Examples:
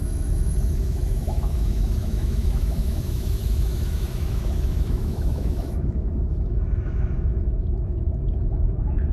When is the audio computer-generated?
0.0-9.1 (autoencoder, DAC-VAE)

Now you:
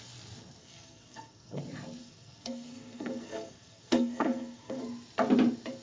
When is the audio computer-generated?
0.6-1.6 (codec, SNAC); 2.0-4.8